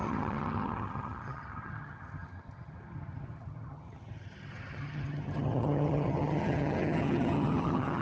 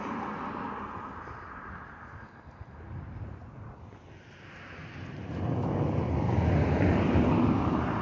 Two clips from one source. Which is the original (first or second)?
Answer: second